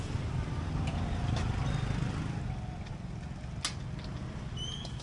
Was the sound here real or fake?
real